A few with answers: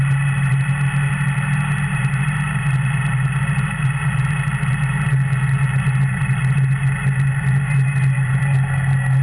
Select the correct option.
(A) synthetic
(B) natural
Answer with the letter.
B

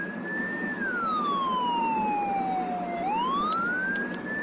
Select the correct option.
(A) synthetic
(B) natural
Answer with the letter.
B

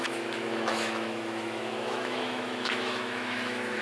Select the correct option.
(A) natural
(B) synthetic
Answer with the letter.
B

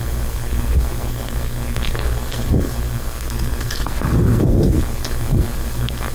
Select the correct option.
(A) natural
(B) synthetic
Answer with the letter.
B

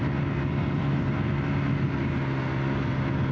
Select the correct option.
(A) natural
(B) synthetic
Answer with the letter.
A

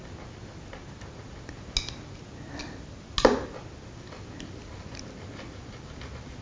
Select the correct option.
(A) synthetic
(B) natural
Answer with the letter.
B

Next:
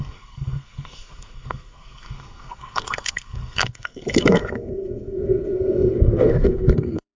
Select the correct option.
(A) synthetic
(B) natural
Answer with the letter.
A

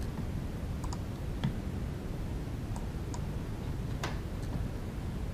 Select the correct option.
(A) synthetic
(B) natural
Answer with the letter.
B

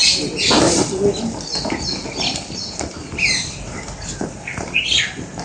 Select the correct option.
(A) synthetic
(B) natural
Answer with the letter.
B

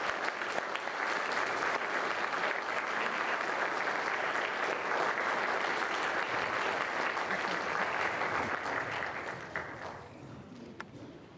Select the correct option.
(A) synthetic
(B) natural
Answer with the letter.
B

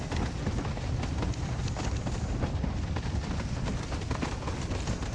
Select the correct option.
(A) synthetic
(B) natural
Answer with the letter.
B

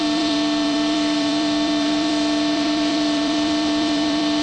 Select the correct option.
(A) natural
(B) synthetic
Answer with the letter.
B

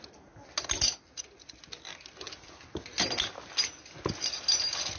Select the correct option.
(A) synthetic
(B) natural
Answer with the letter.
B